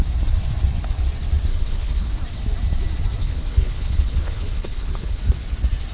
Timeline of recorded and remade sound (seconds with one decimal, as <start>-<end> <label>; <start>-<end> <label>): 0.0-1.5 recorded; 1.5-2.1 remade; 2.1-3.2 recorded; 3.2-5.2 remade; 5.2-5.9 recorded